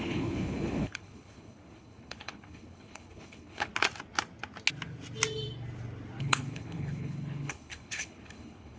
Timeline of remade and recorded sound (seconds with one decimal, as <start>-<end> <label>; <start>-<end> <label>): 0.0-3.7 remade; 3.7-6.2 recorded; 6.2-8.8 remade